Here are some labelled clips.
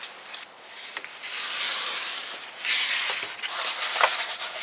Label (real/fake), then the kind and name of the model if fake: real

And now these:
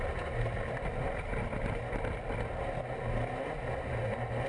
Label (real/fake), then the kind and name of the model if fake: real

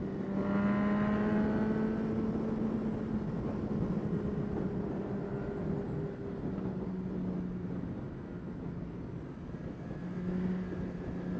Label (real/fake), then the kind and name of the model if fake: real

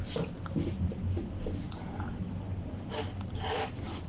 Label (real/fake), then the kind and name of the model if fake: real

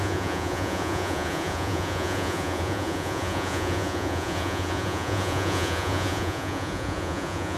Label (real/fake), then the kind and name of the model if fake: fake, vocoder, Vocos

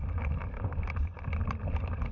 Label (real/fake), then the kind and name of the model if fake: real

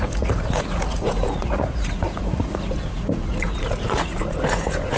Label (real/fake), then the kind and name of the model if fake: fake, vocoder, Vocos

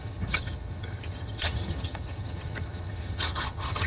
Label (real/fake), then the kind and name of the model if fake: fake, vocoder, HiFi-GAN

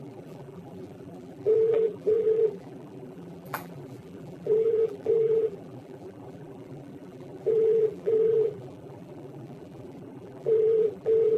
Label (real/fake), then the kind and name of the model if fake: fake, vocoder, BigVGAN v2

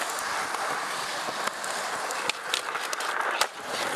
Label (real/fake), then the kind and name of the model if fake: real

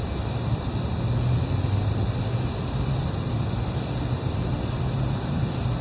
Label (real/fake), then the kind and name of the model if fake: real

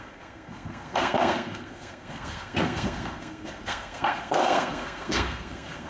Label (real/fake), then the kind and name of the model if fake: fake, codec, SNAC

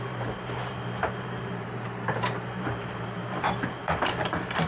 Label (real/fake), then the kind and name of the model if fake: fake, vocoder, BigVGAN v2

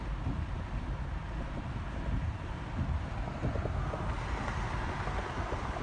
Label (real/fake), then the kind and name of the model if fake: real